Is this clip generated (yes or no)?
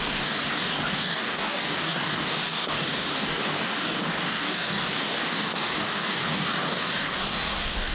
yes